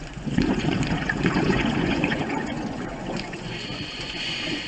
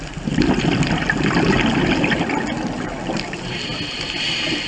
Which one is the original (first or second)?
second